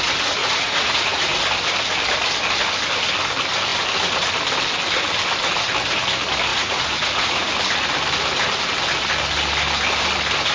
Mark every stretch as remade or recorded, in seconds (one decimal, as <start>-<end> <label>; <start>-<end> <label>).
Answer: 0.0-0.4 recorded; 0.4-1.4 remade; 1.4-6.5 recorded; 6.5-7.5 remade; 7.5-10.5 recorded